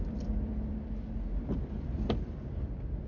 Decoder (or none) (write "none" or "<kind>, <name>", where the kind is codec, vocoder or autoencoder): vocoder, BigVGAN v2